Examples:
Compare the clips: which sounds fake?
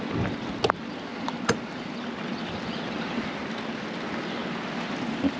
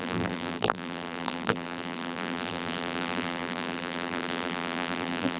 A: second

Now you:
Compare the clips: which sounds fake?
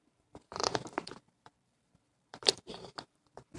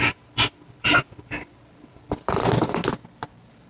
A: first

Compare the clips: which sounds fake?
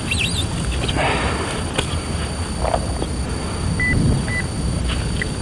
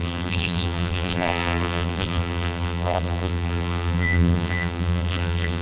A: second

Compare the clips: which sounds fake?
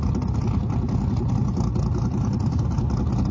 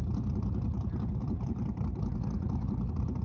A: second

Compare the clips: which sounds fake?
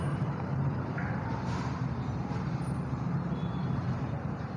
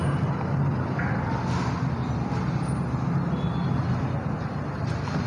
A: first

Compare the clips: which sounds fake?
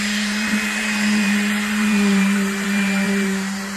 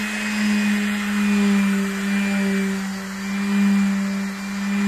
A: first